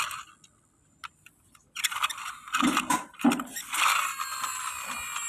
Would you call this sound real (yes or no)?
yes